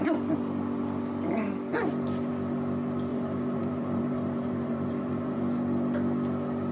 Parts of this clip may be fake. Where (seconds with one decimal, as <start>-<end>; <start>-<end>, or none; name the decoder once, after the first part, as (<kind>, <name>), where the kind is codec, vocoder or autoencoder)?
3.1-5.4 (vocoder, BigVGAN v2)

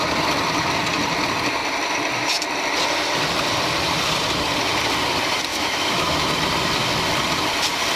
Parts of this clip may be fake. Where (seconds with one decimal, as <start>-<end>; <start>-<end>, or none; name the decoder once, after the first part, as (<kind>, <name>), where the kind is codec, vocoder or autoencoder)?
5.5-6.3 (autoencoder, DAC-VAE)

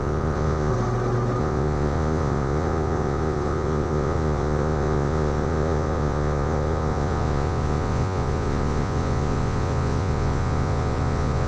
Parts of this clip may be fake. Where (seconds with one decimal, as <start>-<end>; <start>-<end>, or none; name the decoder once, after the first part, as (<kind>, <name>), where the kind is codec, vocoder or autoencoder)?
0.0-0.7 (vocoder, Vocos); 1.4-11.5

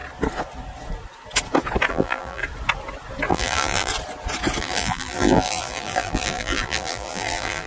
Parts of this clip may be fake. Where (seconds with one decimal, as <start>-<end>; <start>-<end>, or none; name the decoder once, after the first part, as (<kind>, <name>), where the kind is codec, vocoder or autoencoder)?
1.9-2.4 (vocoder, BigVGAN v2); 3.3-3.9; 4.6-7.7

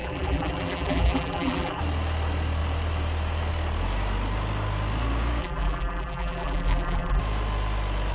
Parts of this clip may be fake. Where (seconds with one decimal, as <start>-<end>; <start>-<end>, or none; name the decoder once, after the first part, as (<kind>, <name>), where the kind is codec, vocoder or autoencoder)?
0.0-1.8 (vocoder, BigVGAN v2); 5.4-7.2